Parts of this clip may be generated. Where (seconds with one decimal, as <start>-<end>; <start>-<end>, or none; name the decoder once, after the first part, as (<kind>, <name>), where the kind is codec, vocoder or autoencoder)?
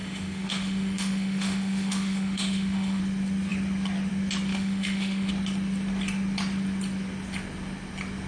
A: 0.0-3.0 (autoencoder, DAC-VAE); 4.5-5.3